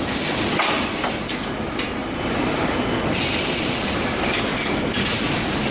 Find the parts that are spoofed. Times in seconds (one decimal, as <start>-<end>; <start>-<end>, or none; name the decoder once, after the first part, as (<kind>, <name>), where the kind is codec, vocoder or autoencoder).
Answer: 2.0-3.7 (vocoder, BigVGAN v2)